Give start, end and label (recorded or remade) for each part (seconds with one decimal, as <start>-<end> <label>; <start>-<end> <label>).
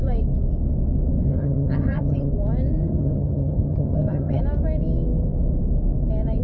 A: 0.0-1.3 recorded; 1.3-2.3 remade; 2.3-2.8 recorded; 2.8-4.4 remade; 4.4-6.4 recorded